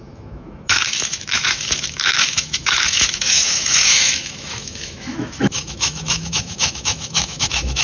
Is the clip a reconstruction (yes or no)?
yes